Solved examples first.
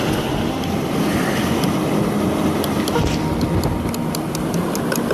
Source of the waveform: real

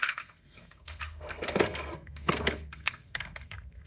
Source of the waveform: fake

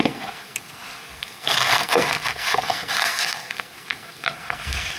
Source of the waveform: fake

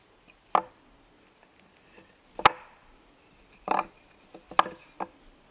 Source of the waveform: real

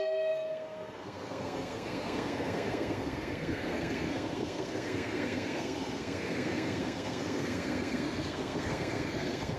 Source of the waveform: fake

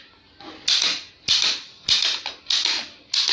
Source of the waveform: real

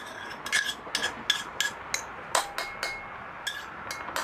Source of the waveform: real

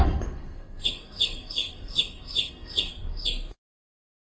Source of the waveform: fake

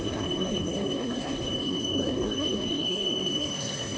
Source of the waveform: fake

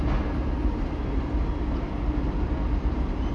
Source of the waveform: real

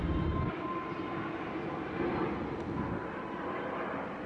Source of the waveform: real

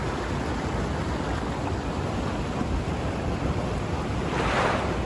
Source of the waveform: real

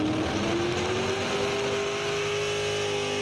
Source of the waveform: real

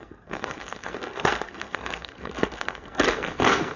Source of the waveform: fake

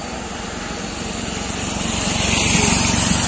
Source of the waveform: real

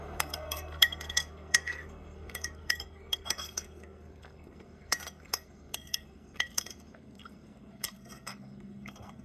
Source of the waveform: fake